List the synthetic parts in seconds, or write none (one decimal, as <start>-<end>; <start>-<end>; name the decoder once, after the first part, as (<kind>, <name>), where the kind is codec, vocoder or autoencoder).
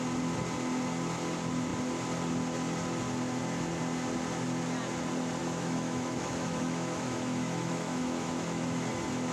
5.4-8.9 (autoencoder, DAC-VAE)